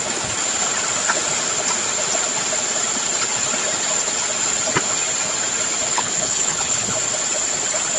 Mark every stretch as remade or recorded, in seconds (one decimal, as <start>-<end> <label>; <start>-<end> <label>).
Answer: 0.0-5.9 recorded; 5.9-6.9 remade; 6.9-8.0 recorded

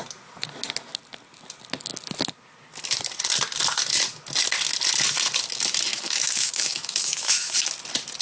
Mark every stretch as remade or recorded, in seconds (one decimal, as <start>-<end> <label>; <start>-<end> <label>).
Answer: 0.0-5.9 recorded; 5.9-7.7 remade; 7.7-8.2 recorded

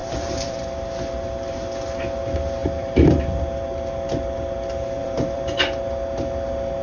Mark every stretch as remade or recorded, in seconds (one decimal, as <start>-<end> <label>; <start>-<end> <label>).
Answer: 0.0-0.6 remade; 0.6-2.6 recorded; 2.6-3.4 remade; 3.4-5.0 recorded; 5.0-5.6 remade; 5.6-6.8 recorded

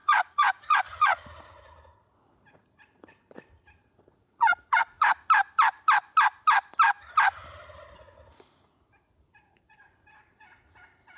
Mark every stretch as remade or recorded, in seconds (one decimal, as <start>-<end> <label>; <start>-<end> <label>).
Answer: 0.0-5.1 remade; 5.1-7.9 recorded; 7.9-11.2 remade

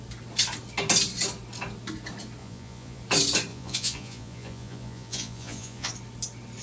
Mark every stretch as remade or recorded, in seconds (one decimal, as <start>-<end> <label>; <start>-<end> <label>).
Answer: 0.0-2.4 recorded; 2.4-3.0 remade; 3.0-3.5 recorded; 3.5-5.9 remade; 5.9-6.6 recorded